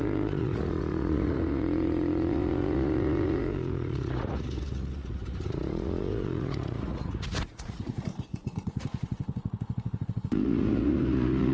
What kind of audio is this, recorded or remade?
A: remade